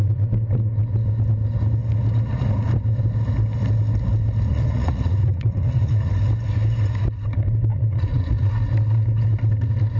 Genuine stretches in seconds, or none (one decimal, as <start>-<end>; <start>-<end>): 0.0-4.5; 6.1-7.7; 8.5-10.0